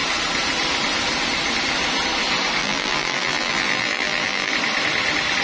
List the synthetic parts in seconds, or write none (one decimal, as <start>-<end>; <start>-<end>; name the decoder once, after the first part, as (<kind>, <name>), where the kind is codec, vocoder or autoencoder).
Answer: 2.6-4.5 (vocoder, BigVGAN v2)